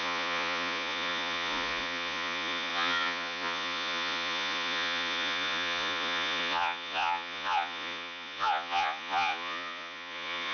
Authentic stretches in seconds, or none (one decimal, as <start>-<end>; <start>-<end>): none